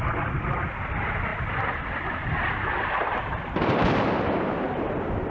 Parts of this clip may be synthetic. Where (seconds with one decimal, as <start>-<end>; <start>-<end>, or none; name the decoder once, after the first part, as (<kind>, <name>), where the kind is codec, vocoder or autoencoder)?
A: none